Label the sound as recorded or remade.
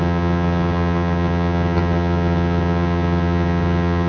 remade